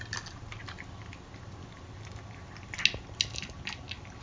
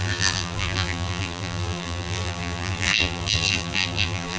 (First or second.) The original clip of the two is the first